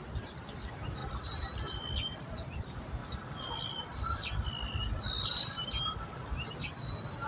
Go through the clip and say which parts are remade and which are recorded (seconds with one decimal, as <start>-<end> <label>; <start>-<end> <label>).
0.0-1.0 recorded; 1.0-1.8 remade; 1.8-3.0 recorded; 3.0-6.5 remade; 6.5-7.3 recorded